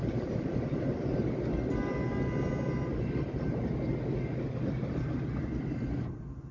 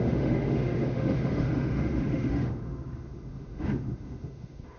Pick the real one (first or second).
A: first